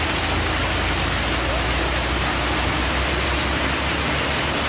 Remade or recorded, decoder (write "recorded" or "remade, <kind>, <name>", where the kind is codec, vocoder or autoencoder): recorded